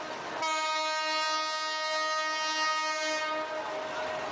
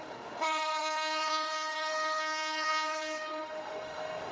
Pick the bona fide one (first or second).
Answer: first